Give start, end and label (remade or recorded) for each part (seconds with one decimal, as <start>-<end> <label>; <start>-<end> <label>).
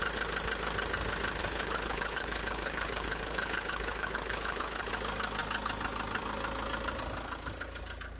0.0-1.4 recorded; 1.4-4.9 remade; 4.9-8.2 recorded